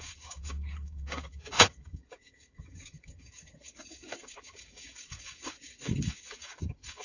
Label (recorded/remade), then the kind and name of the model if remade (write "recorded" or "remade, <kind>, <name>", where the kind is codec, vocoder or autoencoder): remade, codec, DAC